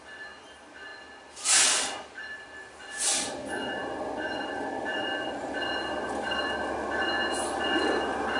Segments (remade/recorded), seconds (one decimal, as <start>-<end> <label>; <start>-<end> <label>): 0.0-8.4 recorded